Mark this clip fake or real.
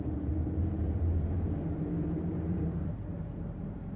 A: fake